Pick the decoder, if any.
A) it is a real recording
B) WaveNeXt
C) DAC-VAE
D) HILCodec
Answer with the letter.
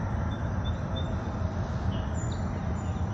A